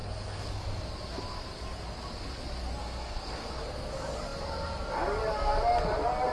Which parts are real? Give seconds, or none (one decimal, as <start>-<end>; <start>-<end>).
0.8-2.8; 3.5-6.3